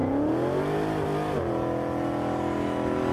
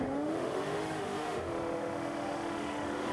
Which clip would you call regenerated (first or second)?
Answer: second